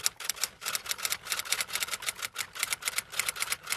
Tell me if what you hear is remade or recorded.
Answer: recorded